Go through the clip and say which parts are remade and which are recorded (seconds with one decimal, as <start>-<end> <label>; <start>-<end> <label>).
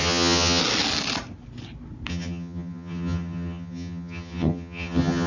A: 0.0-0.6 remade; 0.6-2.1 recorded; 2.1-5.3 remade